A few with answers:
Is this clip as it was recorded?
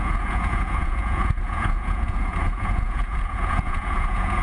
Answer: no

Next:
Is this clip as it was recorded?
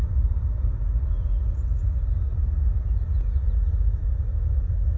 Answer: yes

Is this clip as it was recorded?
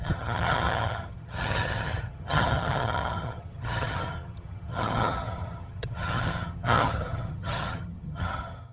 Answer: no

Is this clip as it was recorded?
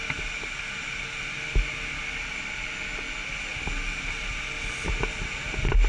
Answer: yes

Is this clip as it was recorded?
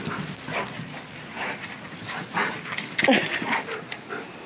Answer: yes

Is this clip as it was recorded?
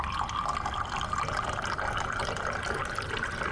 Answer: yes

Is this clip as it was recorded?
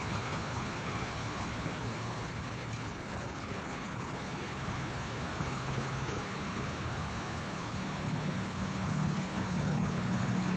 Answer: no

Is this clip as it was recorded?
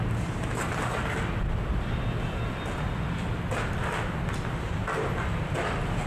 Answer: yes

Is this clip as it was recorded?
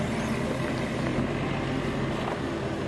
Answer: yes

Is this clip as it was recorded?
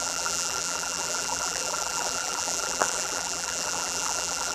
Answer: no